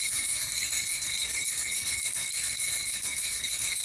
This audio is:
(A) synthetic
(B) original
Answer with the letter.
A